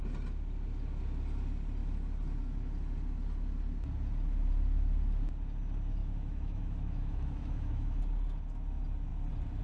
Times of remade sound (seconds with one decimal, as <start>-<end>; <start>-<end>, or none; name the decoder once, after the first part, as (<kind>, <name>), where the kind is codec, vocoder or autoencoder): 6.0-8.0 (autoencoder, DAC-VAE)